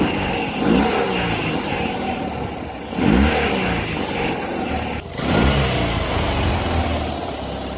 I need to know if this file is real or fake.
real